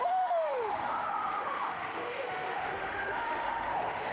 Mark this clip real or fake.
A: fake